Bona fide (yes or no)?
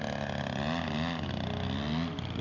yes